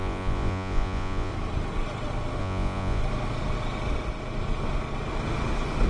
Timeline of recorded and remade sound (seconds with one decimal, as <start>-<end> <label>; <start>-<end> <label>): 0.0-1.3 remade; 1.3-2.4 recorded; 2.4-3.0 remade; 3.0-5.9 recorded